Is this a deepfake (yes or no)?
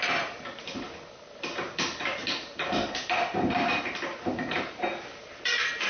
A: no